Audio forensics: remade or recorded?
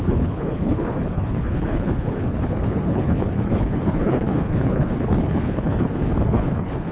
remade